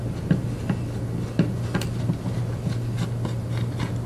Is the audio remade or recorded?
recorded